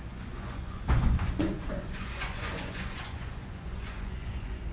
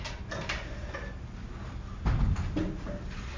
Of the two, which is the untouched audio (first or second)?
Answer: second